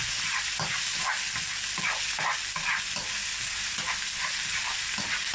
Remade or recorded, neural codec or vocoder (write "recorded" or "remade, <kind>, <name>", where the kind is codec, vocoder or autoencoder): recorded